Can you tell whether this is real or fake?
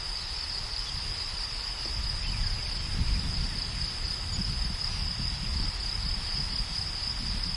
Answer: real